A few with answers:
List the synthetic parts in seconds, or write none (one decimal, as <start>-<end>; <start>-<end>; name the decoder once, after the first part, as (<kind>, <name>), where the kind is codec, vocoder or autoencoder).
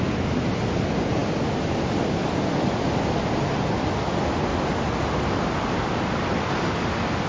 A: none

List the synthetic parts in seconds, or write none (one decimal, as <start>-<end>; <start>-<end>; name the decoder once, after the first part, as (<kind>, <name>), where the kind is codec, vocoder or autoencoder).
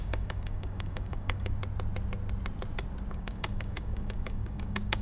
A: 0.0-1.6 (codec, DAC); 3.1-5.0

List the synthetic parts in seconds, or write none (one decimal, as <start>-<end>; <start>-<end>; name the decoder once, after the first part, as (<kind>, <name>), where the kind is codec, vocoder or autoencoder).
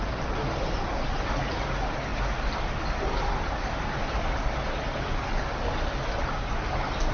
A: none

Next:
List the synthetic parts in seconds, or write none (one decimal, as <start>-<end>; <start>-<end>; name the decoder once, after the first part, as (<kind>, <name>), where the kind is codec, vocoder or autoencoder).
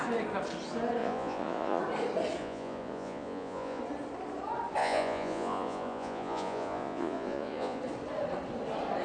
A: 1.0-1.8 (vocoder, Vocos); 2.4-3.8; 4.8-7.8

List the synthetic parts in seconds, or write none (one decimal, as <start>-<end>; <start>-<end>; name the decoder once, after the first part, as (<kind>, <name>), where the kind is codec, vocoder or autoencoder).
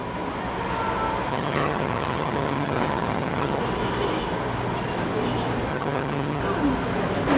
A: 1.3-3.6 (vocoder, HiFi-GAN); 5.7-6.4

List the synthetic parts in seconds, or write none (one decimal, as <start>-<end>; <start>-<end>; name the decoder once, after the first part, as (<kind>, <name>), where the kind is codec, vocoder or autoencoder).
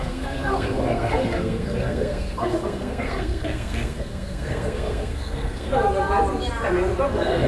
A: 0.0-5.7 (codec, SNAC); 7.1-7.5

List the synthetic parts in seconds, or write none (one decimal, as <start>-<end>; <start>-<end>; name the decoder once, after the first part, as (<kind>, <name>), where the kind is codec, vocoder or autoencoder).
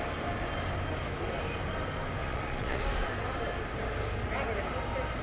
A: 2.2-2.8 (vocoder, Vocos)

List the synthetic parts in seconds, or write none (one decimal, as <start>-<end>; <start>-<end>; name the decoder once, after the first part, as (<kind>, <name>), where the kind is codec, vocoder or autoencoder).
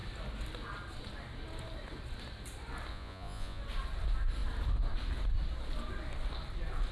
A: 2.9-3.6 (vocoder, Vocos)